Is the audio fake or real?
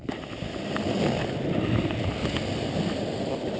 real